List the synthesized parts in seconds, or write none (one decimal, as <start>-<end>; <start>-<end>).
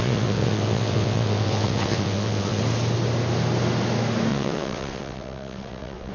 0.0-2.6; 4.3-6.1